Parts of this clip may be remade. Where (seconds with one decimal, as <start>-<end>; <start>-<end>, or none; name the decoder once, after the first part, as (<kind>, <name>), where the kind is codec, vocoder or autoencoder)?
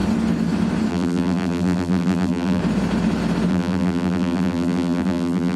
0.9-2.6 (vocoder, BigVGAN v2); 3.5-5.6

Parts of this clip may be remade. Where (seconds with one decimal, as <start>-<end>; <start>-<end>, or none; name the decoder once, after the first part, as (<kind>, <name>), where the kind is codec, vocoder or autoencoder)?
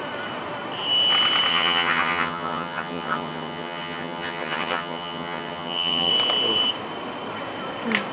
1.5-6.1 (vocoder, HiFi-GAN)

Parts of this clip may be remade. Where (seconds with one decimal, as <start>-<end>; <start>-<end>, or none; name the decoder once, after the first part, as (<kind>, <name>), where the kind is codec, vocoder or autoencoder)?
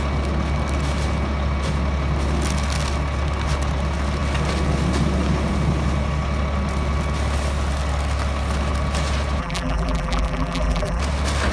9.4-11.0 (vocoder, BigVGAN v2)